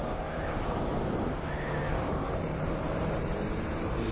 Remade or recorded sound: remade